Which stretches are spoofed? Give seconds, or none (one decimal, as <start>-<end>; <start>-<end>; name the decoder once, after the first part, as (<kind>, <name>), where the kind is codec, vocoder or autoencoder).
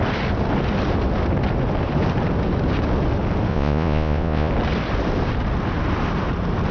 3.5-4.5 (vocoder, Vocos)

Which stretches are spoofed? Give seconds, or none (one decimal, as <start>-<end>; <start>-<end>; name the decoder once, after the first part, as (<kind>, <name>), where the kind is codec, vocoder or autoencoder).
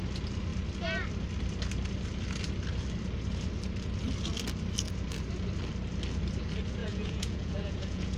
6.8-8.2 (vocoder, Vocos)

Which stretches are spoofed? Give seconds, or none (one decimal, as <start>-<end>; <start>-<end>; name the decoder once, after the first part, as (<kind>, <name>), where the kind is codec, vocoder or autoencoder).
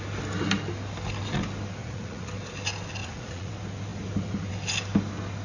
1.8-2.3 (vocoder, Vocos); 3.0-3.5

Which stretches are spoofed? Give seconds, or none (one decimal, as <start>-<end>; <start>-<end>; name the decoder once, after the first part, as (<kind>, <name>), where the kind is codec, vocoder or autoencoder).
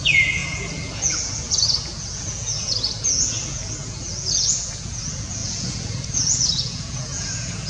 0.0-7.7 (vocoder, Vocos)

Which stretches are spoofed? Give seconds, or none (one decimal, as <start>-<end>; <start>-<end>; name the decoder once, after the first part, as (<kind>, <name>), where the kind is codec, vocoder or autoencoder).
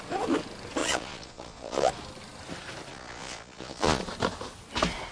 0.8-1.9 (vocoder, Vocos); 2.9-4.0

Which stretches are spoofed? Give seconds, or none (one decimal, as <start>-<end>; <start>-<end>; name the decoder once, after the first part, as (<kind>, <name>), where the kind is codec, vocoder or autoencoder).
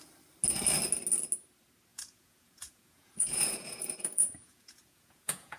1.9-5.6 (vocoder, Vocos)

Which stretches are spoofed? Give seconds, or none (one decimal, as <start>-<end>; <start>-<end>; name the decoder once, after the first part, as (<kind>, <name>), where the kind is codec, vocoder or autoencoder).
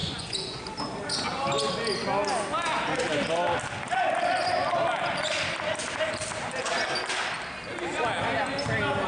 0.0-0.6 (vocoder, Vocos)